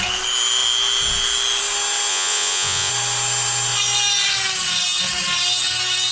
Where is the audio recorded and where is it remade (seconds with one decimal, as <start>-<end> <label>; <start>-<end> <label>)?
0.0-2.1 recorded; 2.1-2.9 remade; 2.9-6.1 recorded

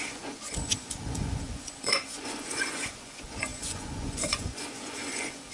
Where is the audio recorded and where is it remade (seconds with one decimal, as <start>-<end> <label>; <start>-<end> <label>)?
0.0-5.5 remade